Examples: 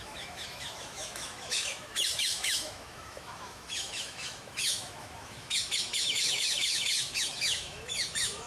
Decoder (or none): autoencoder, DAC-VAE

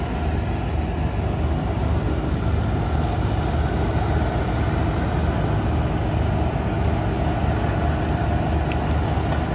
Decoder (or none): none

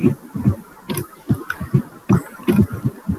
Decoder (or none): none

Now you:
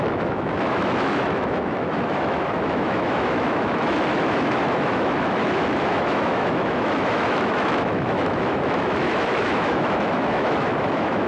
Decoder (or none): autoencoder, DAC-VAE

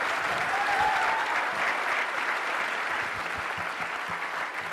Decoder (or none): none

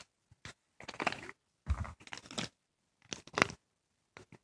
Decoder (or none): none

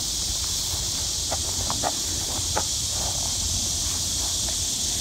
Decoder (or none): none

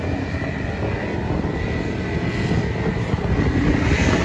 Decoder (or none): none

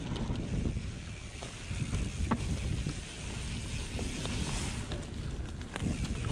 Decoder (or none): none